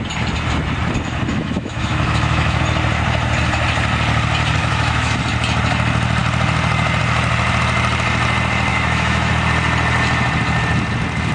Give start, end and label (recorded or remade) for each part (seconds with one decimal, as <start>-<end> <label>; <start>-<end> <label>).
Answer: 0.0-1.3 recorded; 1.3-2.6 remade; 2.6-4.6 recorded; 4.6-5.2 remade; 5.2-8.7 recorded; 8.7-9.3 remade; 9.3-11.3 recorded

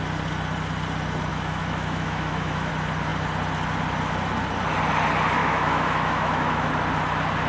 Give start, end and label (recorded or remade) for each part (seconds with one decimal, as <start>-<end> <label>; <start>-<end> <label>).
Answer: 0.0-1.3 recorded; 1.3-2.7 remade; 2.7-5.4 recorded; 5.4-6.7 remade; 6.7-7.5 recorded

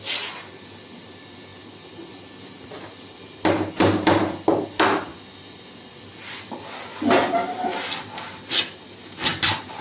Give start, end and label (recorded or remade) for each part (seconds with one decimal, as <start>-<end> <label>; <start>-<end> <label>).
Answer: 0.0-9.8 recorded

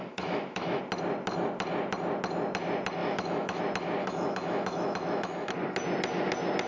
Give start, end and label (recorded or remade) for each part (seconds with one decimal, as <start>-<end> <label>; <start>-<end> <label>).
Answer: 0.0-0.8 remade; 0.8-3.0 recorded; 3.0-3.6 remade; 3.6-4.0 recorded; 4.0-5.5 remade; 5.5-6.7 recorded